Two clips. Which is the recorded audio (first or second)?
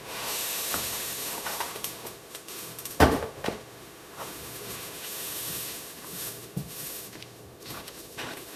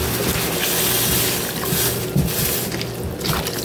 second